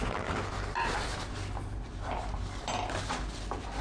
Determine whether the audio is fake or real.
real